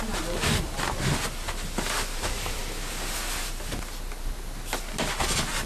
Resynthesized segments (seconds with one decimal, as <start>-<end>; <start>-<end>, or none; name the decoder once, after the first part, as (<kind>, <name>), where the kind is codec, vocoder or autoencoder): none